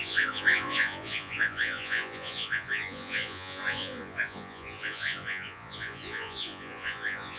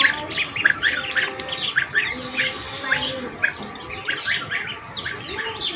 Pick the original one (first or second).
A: second